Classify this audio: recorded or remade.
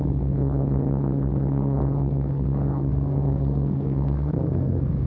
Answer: remade